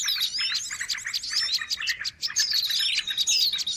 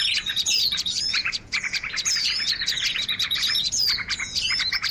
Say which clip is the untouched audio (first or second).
first